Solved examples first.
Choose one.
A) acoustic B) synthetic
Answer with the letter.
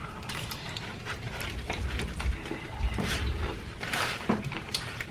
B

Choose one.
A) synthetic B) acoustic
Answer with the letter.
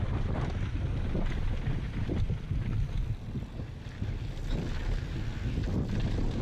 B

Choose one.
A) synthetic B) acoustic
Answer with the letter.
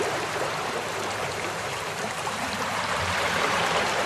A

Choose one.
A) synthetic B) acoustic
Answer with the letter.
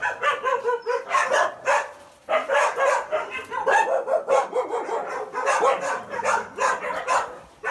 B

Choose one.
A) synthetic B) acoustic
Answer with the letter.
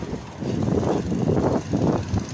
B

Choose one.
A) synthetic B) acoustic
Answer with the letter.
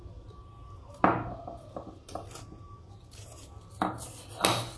B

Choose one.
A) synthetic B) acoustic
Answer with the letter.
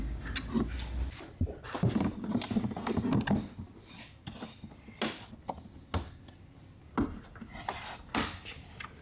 B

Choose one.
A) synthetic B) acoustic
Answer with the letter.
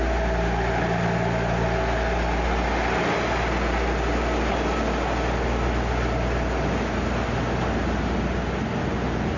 B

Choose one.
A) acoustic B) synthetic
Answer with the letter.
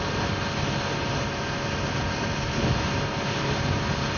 A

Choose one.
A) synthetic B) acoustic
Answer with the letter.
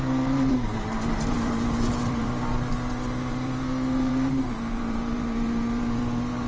A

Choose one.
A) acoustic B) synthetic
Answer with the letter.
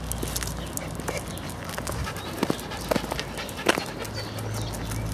A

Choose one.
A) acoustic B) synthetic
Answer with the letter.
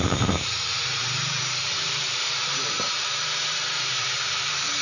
B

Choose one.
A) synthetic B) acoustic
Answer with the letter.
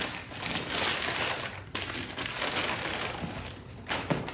B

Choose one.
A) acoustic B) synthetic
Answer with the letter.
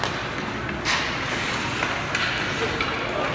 A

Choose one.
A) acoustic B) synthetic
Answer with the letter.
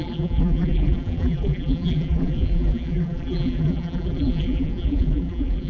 B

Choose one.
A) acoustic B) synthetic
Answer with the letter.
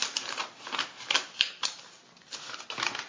A